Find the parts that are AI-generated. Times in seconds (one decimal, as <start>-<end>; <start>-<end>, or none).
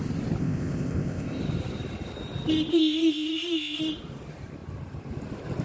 0.4-1.4; 2.7-3.8